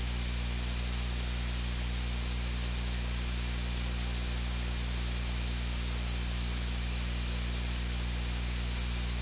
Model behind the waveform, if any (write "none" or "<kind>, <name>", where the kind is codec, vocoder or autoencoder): none